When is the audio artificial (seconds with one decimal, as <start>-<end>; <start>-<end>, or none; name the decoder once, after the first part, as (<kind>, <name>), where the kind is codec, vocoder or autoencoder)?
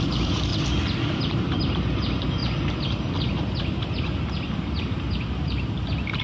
0.0-0.5 (vocoder, BigVGAN v2); 1.2-2.4; 4.8-6.2